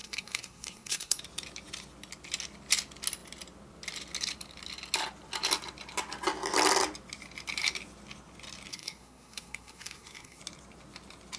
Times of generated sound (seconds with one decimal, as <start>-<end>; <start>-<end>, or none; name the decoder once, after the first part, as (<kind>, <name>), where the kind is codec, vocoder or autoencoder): 0.0-1.2 (codec, SNAC); 8.7-10.4